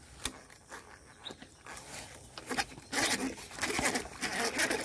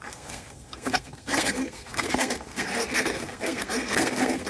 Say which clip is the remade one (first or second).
second